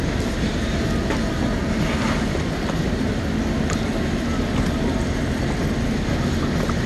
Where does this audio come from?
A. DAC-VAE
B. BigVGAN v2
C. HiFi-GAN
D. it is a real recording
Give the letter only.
D